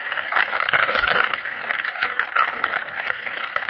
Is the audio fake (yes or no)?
yes